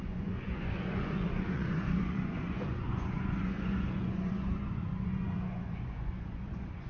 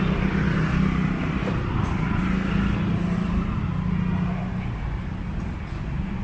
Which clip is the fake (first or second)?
first